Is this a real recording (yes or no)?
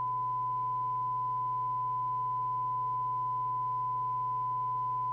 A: yes